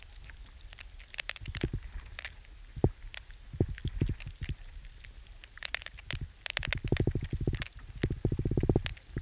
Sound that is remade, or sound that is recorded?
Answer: recorded